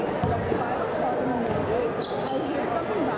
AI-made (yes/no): no